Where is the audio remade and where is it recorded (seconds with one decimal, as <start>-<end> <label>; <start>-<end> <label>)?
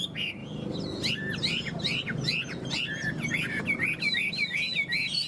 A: 0.0-5.3 recorded